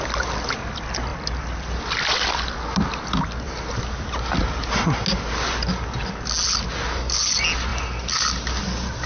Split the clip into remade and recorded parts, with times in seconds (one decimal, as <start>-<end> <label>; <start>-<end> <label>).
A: 0.0-9.1 recorded